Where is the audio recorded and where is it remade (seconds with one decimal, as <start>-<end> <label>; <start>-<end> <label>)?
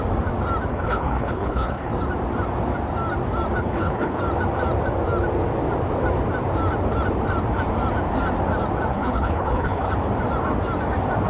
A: 0.0-0.7 recorded; 0.7-1.9 remade; 1.9-3.6 recorded; 3.6-4.2 remade; 4.2-8.9 recorded; 8.9-9.9 remade; 9.9-11.3 recorded